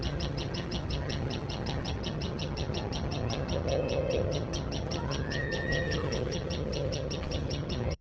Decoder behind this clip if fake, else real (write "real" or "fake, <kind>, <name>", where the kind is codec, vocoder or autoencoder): fake, vocoder, HiFi-GAN